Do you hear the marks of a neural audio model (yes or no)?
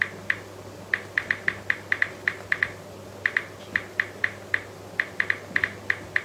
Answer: no